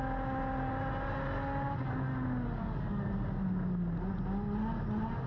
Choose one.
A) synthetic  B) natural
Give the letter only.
B